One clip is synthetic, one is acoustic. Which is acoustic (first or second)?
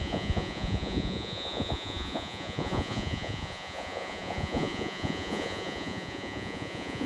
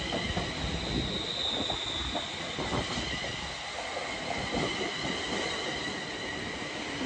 second